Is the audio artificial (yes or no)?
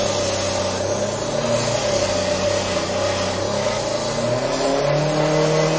no